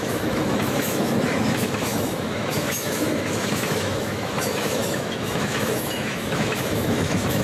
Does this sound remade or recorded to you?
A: remade